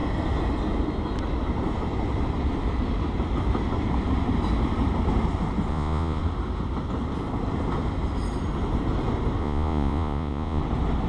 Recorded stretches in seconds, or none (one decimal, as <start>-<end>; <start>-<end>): 0.0-5.7; 6.2-9.4; 10.6-11.1